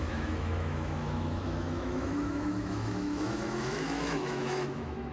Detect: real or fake fake